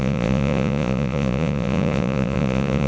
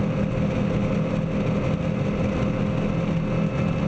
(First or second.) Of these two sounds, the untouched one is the second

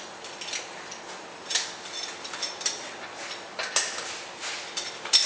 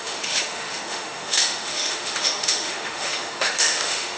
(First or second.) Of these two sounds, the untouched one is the first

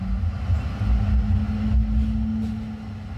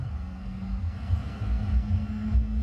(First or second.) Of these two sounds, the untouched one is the first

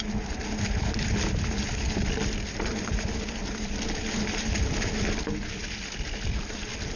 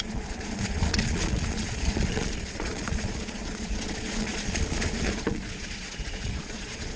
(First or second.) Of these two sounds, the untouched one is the first